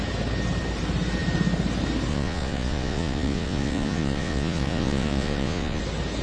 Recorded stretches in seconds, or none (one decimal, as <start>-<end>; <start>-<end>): 0.0-2.1; 5.8-6.2